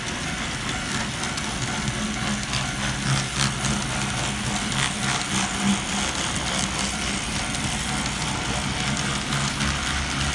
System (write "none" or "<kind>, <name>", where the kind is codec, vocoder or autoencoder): none